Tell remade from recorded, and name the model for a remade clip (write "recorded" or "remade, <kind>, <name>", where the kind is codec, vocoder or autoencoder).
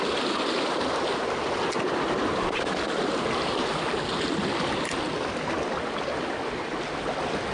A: recorded